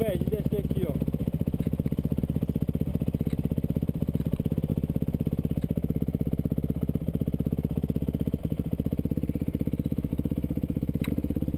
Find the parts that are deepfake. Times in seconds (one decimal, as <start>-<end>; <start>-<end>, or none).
10.1-11.1